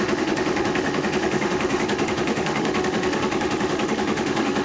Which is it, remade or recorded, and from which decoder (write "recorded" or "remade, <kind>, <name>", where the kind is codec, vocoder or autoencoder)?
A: remade, autoencoder, DAC-VAE